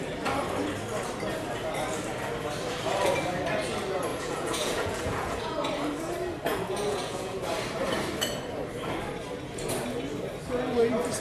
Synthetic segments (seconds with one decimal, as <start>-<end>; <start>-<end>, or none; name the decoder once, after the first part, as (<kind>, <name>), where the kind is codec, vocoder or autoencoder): 4.1-5.5 (vocoder, Vocos); 6.5-7.4